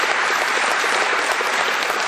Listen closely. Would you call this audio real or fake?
fake